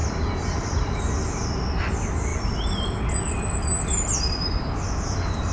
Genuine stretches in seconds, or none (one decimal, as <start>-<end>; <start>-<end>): 1.0-2.3; 3.0-5.5